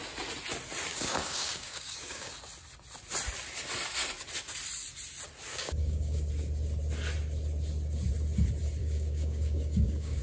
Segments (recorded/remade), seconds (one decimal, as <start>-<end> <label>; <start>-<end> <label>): 0.0-0.9 recorded; 0.9-2.3 remade; 2.3-5.5 recorded; 5.5-6.3 remade; 6.3-8.8 recorded; 8.8-10.2 remade